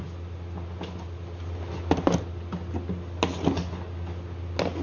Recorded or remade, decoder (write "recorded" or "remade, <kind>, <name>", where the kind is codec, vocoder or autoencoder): recorded